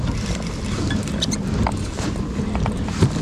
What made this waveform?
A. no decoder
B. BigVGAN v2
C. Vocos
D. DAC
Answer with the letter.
A